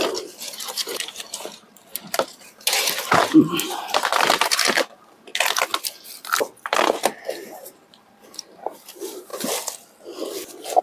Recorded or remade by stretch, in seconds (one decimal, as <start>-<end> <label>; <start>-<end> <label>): 0.0-5.3 remade; 5.3-7.3 recorded; 7.3-9.3 remade; 9.3-10.8 recorded

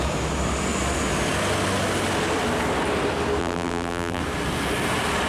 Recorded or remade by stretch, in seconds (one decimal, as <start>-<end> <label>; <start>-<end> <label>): 0.0-3.4 recorded; 3.4-4.2 remade; 4.2-5.3 recorded

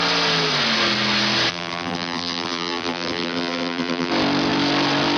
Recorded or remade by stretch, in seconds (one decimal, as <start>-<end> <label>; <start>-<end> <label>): 0.0-1.5 recorded; 1.5-4.1 remade; 4.1-5.2 recorded